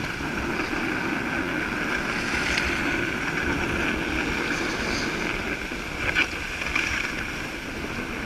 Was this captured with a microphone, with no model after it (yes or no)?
yes